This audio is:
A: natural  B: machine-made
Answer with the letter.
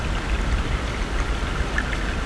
A